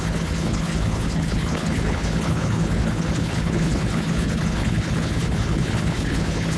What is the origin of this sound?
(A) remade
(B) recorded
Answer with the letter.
A